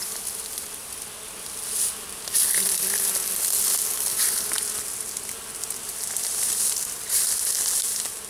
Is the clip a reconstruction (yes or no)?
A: no